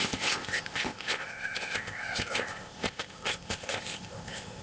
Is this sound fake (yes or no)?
yes